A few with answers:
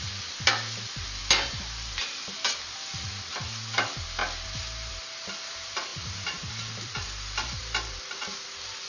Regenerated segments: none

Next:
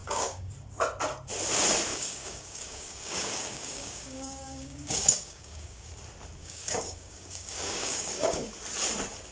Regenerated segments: 0.0-0.5; 1.9-5.9; 6.4-8.5

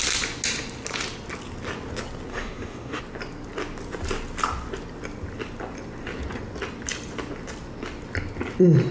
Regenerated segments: 2.3-3.0

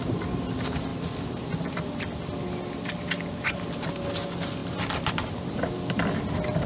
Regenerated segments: none